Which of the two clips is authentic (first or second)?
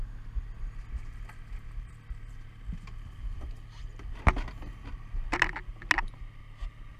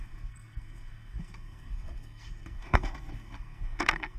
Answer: first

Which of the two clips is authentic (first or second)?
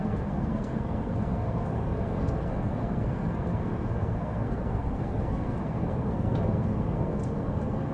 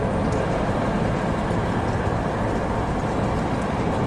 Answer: second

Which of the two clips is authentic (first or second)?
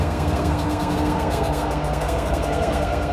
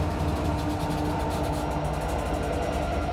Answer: second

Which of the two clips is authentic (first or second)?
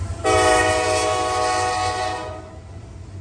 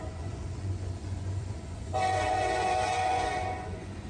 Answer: first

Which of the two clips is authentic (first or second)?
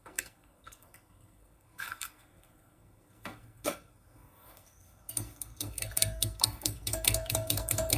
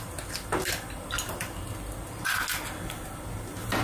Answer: second